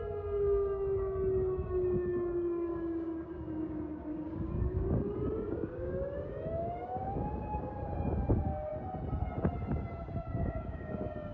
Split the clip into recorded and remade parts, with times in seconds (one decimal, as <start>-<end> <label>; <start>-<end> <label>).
0.0-8.7 remade; 8.7-10.2 recorded; 10.2-11.3 remade